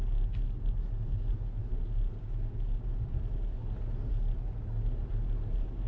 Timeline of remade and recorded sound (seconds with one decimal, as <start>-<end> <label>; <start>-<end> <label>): 0.0-5.9 recorded